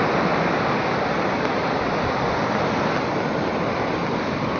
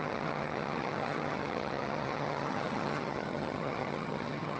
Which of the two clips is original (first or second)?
first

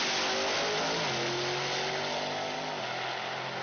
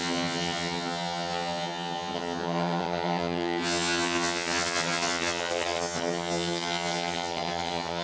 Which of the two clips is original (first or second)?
first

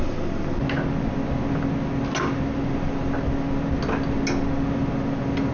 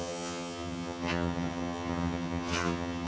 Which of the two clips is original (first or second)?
first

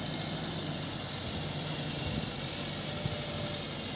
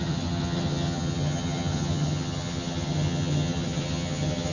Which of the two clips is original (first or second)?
first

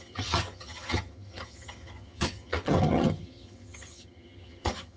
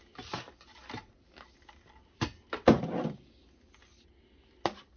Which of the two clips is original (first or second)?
second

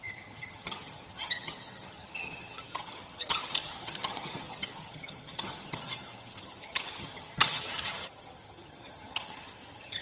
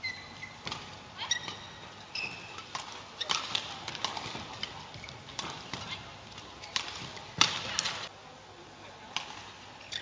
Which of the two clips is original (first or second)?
second